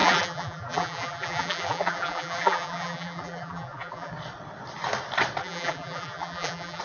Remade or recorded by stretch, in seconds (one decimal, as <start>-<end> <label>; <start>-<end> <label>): 0.0-4.1 remade; 4.1-5.4 recorded; 5.4-6.8 remade